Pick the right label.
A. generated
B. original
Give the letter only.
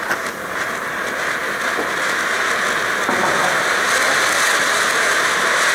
B